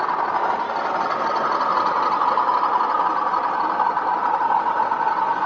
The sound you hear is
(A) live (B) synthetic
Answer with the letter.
A